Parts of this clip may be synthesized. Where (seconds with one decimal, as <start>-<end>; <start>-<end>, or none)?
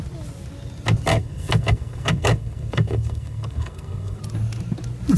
1.1-4.2